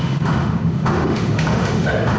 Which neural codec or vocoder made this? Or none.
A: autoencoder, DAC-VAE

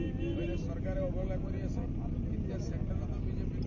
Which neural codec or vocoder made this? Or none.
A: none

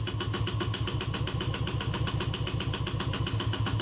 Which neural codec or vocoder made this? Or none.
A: none